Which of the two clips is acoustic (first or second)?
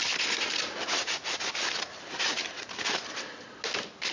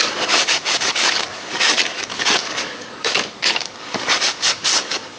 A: first